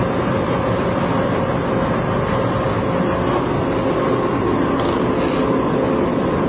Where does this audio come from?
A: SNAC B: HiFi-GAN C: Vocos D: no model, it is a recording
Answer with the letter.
D